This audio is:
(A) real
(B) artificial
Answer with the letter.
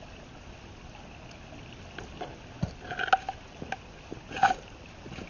A